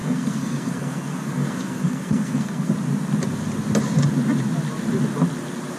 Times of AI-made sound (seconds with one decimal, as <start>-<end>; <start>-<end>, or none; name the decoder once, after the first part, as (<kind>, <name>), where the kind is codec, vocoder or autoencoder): 0.0-2.7 (codec, SNAC)